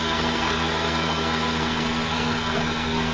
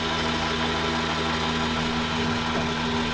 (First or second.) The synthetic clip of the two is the first